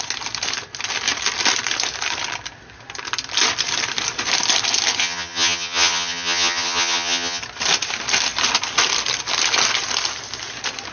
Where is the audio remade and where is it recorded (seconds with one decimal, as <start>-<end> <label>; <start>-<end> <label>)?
0.0-5.0 recorded; 5.0-7.4 remade; 7.4-10.9 recorded